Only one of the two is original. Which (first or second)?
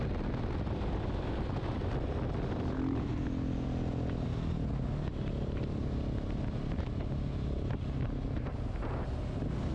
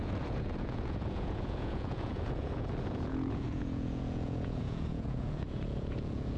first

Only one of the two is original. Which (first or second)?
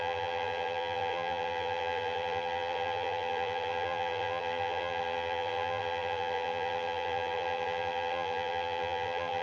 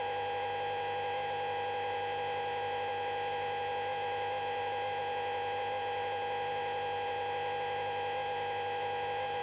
second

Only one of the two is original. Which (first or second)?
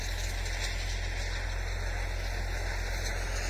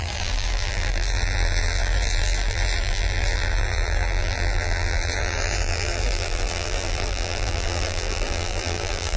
first